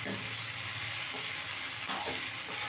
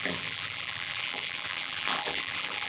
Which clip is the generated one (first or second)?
second